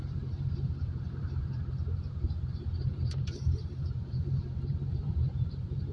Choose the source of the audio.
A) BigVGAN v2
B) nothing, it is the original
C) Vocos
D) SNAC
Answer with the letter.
A